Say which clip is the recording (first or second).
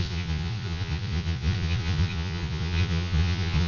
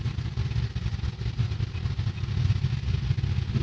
second